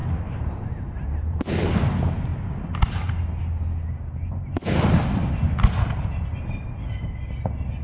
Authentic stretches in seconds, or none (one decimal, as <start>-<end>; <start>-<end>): 1.4-7.8